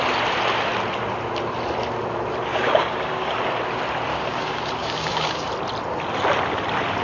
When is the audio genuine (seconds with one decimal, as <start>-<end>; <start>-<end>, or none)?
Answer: 0.0-2.5; 3.3-4.1; 5.5-7.0